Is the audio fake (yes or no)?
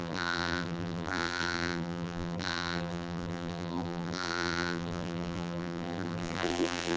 yes